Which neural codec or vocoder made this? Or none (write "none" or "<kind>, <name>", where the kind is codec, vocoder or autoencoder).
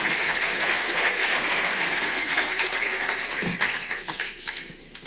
codec, SNAC